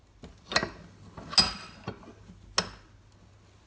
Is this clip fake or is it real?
real